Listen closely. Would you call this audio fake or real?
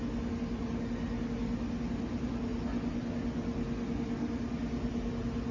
real